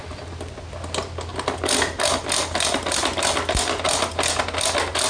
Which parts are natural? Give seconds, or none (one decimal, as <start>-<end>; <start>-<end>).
0.0-5.1